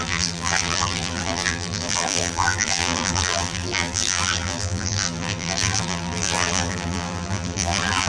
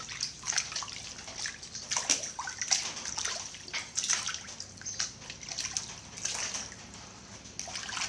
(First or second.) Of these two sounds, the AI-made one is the first